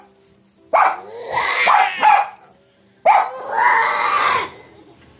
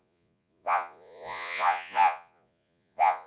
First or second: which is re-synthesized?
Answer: second